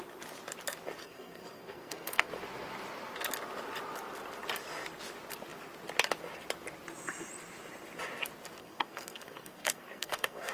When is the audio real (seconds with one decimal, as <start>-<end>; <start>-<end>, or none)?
0.0-1.0; 2.3-8.6